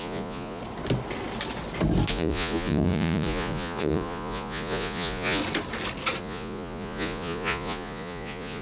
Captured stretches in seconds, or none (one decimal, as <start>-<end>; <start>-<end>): 0.6-2.1; 5.4-6.2